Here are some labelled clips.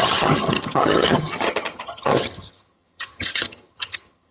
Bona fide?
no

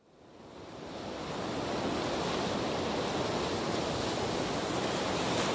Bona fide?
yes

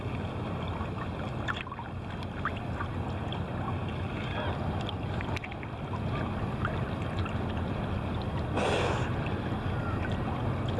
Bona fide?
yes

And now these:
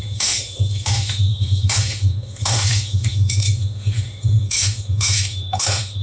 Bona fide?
no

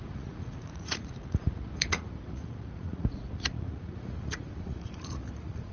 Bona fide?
no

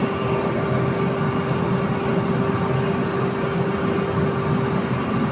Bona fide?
yes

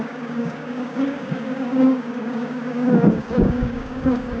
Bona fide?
no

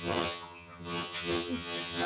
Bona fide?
no